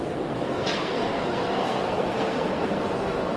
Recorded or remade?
remade